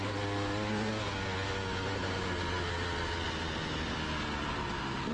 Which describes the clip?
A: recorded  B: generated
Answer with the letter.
A